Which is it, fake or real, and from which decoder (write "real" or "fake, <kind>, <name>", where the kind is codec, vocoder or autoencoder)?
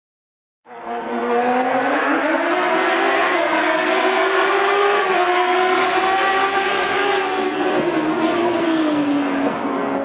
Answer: fake, codec, SNAC